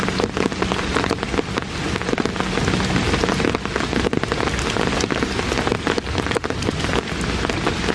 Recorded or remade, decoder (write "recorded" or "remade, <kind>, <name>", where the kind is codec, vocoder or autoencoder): recorded